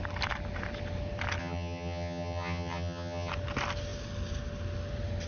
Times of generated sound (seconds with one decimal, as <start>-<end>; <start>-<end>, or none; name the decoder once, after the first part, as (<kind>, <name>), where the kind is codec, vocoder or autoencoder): 1.4-3.3 (vocoder, HiFi-GAN)